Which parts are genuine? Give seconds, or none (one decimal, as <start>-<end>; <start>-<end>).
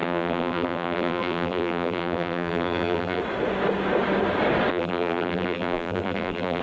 3.2-4.7